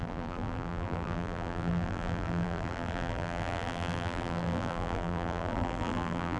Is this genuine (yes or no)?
no